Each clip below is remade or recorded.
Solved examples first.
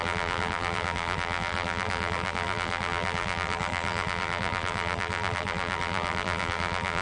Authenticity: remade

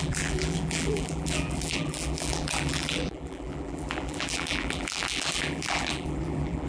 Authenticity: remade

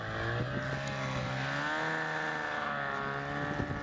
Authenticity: recorded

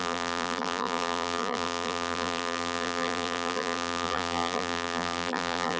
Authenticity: remade